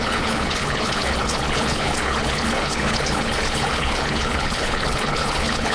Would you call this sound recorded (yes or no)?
no